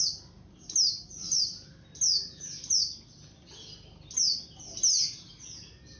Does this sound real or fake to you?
real